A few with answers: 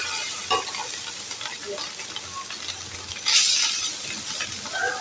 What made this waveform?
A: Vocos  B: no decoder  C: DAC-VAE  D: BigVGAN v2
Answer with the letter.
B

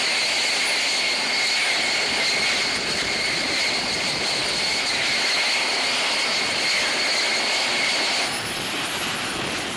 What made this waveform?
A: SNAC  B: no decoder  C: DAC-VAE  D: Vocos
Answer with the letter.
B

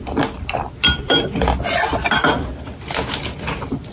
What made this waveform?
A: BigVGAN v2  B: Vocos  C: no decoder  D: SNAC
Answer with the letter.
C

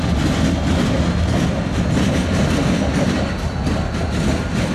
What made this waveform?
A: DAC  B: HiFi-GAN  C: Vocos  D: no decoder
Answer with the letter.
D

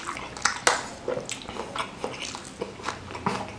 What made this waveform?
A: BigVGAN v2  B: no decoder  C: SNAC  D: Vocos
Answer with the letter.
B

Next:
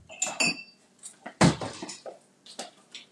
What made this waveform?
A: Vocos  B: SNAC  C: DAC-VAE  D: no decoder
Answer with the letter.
D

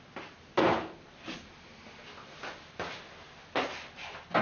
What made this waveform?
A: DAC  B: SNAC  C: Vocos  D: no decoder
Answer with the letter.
D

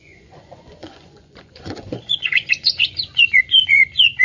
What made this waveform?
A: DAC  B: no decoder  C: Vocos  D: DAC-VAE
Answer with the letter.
C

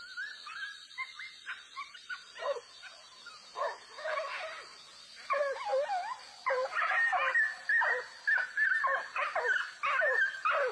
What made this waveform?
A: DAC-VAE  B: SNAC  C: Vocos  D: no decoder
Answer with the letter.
D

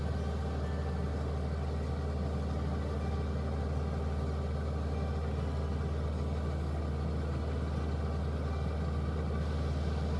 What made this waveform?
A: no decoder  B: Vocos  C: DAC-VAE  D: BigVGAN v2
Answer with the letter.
A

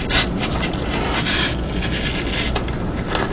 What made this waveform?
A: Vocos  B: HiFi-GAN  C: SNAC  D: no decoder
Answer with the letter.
D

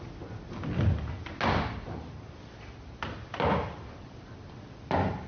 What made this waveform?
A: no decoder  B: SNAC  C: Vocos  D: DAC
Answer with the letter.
A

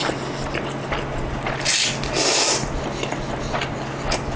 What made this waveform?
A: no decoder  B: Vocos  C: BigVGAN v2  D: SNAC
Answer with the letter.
A